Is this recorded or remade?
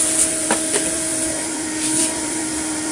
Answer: remade